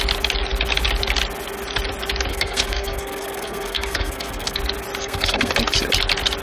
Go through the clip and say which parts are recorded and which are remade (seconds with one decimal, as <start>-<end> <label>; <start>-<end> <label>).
0.0-2.3 recorded; 2.3-4.6 remade; 4.6-5.0 recorded; 5.0-5.5 remade; 5.5-6.4 recorded